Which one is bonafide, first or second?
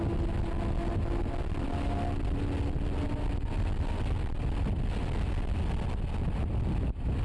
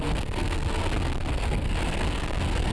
first